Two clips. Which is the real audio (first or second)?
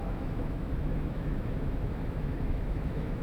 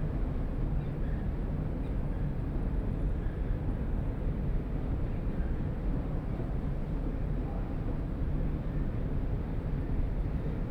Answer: second